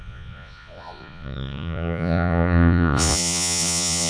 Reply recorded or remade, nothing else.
remade